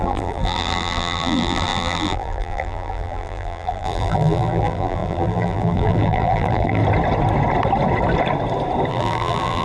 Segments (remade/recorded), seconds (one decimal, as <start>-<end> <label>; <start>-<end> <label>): 0.0-6.8 remade; 6.8-8.9 recorded; 8.9-9.6 remade